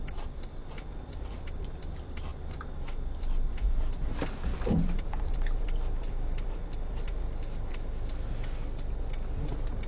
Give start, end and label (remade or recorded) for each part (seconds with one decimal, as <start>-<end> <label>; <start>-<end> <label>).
0.0-4.5 recorded; 4.5-7.7 remade; 7.7-9.9 recorded